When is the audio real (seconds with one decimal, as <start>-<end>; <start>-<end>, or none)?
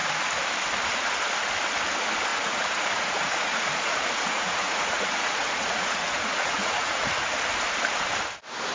0.0-2.3; 7.2-8.7